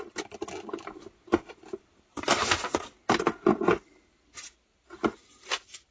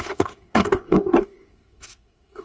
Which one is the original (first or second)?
first